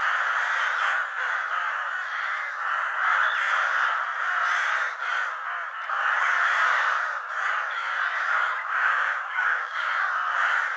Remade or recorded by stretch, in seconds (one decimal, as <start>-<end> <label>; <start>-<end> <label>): 0.0-8.6 recorded; 8.6-9.9 remade; 9.9-10.8 recorded